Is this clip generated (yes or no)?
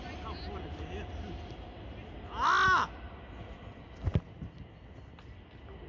no